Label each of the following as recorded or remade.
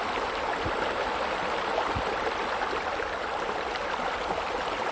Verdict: recorded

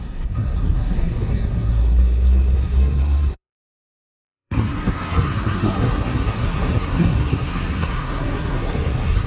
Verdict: remade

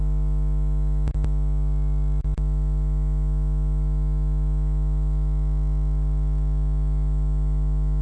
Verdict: remade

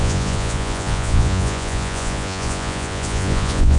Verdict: remade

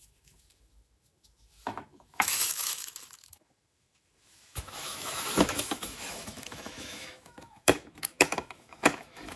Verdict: remade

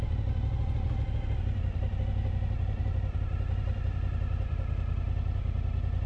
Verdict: recorded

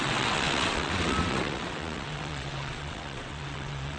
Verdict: remade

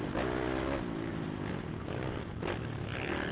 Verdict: recorded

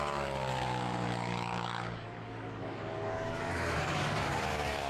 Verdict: remade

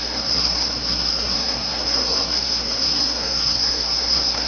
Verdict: remade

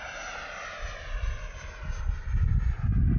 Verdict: recorded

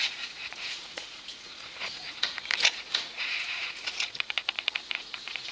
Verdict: remade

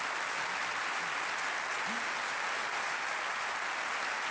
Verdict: recorded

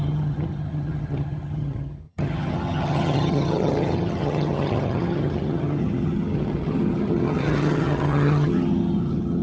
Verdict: remade